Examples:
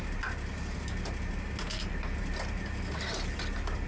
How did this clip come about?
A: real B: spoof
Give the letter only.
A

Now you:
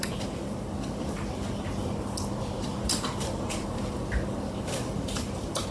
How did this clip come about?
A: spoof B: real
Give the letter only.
B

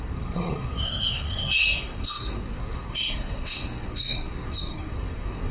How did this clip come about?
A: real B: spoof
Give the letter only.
B